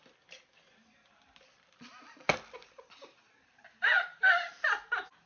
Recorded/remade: recorded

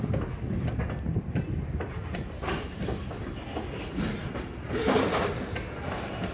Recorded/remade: recorded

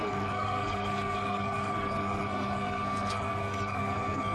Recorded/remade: remade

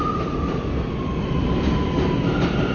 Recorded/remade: recorded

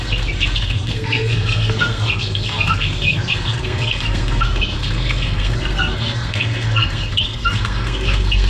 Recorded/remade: remade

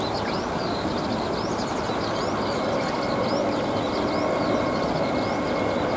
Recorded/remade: recorded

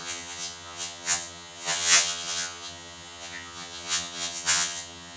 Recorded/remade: remade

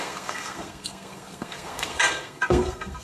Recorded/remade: remade